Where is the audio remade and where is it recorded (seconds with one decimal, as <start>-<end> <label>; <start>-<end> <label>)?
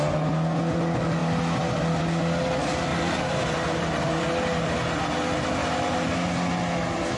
0.0-2.9 recorded; 2.9-4.2 remade; 4.2-5.6 recorded; 5.6-6.1 remade; 6.1-7.2 recorded